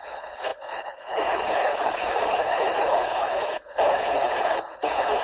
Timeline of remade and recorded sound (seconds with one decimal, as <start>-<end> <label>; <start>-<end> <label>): 0.0-5.2 remade